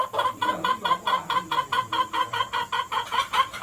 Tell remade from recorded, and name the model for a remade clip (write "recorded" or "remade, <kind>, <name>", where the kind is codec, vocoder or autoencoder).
remade, vocoder, Vocos